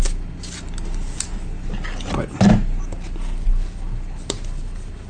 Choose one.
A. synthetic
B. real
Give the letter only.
B